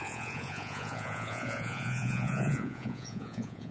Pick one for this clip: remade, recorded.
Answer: remade